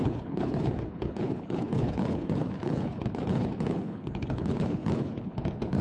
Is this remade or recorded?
remade